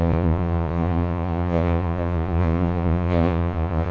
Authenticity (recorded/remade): remade